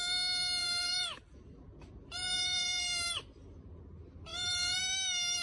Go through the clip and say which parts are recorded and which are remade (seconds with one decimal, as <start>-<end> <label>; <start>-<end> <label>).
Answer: 0.0-0.6 recorded; 0.6-3.8 remade; 3.8-4.3 recorded; 4.3-4.8 remade; 4.8-5.4 recorded

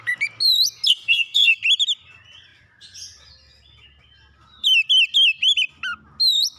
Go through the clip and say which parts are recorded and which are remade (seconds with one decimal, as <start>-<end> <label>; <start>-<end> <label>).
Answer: 0.0-0.9 recorded; 0.9-1.6 remade; 1.6-6.6 recorded